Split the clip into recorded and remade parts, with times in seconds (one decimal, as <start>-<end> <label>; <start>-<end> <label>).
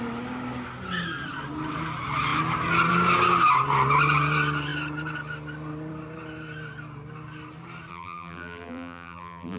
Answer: 0.0-7.9 recorded; 7.9-9.6 remade